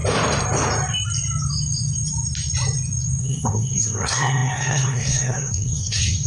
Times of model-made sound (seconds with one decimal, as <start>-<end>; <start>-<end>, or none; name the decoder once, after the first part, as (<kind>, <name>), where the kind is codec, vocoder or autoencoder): 3.2-6.3 (codec, SNAC)